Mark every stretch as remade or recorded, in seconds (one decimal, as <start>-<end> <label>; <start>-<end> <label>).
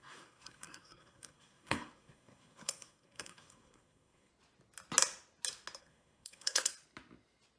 0.0-4.3 remade; 4.3-5.8 recorded; 5.8-6.7 remade; 6.7-7.6 recorded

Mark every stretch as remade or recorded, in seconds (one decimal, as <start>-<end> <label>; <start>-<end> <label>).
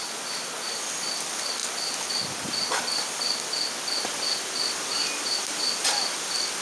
0.0-6.6 recorded